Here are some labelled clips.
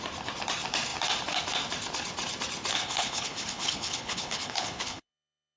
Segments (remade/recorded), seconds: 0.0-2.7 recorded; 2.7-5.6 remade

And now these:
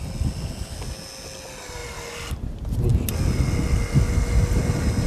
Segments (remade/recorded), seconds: 0.0-5.1 recorded

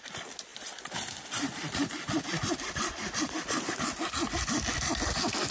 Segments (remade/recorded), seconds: 0.0-0.5 recorded; 0.5-3.6 remade; 3.6-5.5 recorded

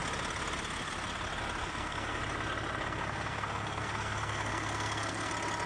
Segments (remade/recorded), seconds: 0.0-1.6 recorded; 1.6-2.2 remade; 2.2-2.8 recorded; 2.8-5.3 remade; 5.3-5.7 recorded

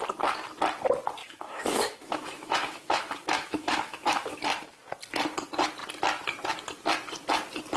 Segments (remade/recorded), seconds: 0.0-1.2 recorded; 1.2-4.4 remade; 4.4-7.8 recorded

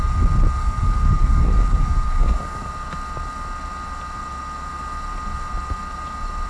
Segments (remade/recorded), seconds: 0.0-0.6 recorded; 0.6-2.7 remade; 2.7-6.5 recorded

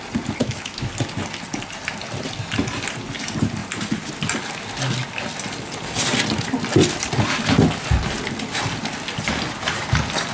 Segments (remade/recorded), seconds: 0.0-0.4 recorded; 0.4-0.9 remade; 0.9-10.3 recorded